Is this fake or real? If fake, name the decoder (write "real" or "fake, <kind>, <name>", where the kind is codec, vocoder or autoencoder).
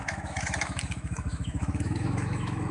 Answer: fake, autoencoder, DAC-VAE